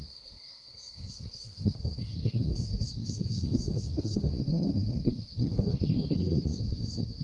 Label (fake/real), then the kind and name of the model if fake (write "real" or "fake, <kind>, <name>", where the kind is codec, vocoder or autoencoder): fake, codec, SNAC